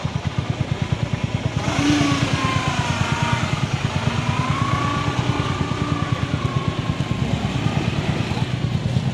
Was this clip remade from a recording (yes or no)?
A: no